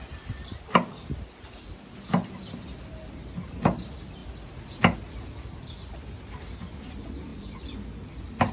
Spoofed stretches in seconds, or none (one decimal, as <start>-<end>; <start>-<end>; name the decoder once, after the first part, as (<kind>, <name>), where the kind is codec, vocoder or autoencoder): none